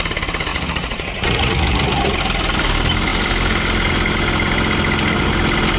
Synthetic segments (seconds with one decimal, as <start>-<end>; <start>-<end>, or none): 0.5-2.2